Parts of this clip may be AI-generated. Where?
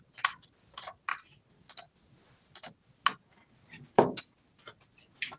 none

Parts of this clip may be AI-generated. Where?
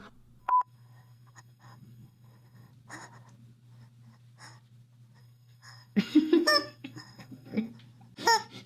0.4-2.7 (codec, SNAC); 5.2-7.7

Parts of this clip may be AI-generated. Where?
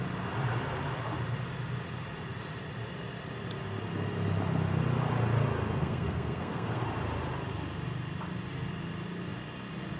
5.8-6.8 (codec, SNAC)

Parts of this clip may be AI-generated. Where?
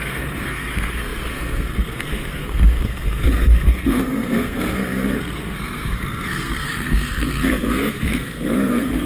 0.0-9.1 (codec, SNAC)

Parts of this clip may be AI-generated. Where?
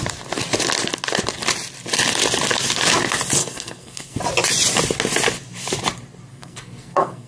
3.4-4.2 (codec, SNAC); 6.3-7.3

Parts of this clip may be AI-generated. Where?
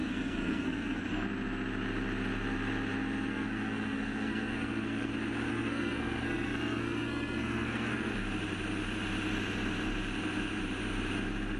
0.0-1.0 (codec, SNAC); 3.3-5.1; 5.5-8.1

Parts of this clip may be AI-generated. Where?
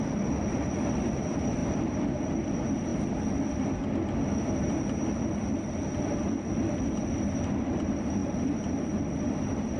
none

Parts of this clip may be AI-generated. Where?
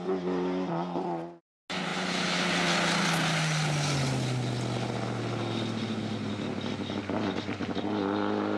none